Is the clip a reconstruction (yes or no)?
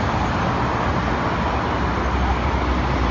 no